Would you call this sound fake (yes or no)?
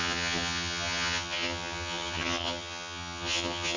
yes